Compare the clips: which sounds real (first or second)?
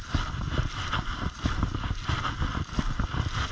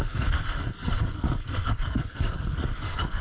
first